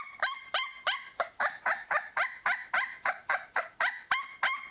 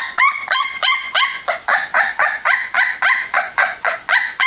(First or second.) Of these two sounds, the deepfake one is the second